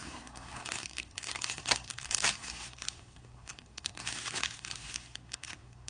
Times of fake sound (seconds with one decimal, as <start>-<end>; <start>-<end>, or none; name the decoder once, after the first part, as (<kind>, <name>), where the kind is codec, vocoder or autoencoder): 0.0-5.9 (codec, SNAC)

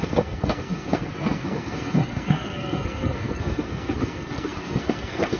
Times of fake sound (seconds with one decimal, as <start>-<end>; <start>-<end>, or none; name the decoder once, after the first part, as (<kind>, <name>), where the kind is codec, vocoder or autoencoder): 0.0-5.4 (codec, SNAC)

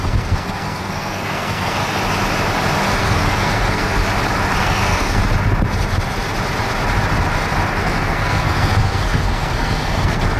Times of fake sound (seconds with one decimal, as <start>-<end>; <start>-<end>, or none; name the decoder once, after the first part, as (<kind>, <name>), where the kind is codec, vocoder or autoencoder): 0.0-1.8 (codec, SNAC); 3.0-4.0; 4.6-5.2; 7.8-10.4